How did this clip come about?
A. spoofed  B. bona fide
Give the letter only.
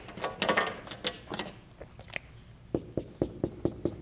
B